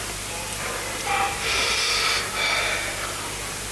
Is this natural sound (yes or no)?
yes